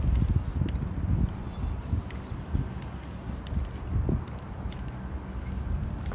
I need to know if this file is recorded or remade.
recorded